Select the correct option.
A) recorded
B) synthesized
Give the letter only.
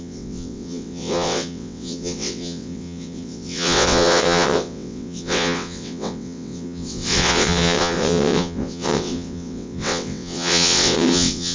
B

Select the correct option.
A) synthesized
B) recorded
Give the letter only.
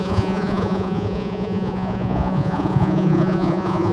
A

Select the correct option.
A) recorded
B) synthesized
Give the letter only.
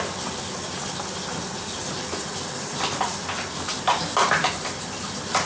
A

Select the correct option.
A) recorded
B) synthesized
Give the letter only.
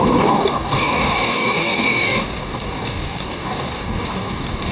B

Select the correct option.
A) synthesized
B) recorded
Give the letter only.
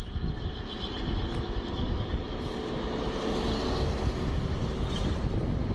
B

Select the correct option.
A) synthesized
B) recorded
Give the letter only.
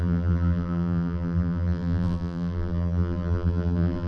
A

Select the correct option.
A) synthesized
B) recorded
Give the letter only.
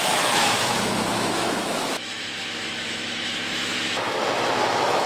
A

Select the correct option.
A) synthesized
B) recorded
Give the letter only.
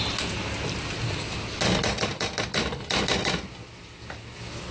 B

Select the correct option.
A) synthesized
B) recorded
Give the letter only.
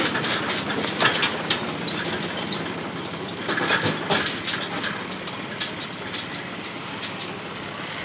B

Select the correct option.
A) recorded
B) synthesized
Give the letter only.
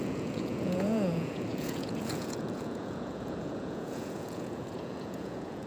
B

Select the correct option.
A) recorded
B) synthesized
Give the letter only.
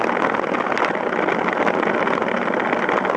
A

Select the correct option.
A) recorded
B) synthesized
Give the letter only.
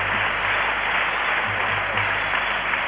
A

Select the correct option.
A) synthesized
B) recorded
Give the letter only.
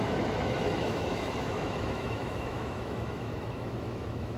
A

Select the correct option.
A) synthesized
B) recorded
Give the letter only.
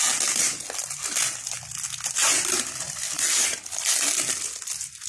B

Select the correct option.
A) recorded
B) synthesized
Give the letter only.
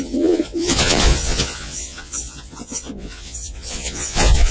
B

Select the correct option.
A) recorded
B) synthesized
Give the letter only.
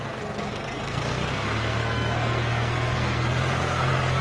B